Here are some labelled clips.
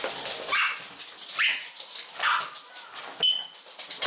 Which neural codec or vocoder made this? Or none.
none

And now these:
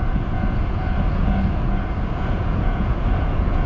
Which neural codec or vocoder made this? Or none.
vocoder, Vocos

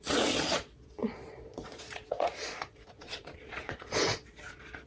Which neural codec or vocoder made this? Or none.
vocoder, Vocos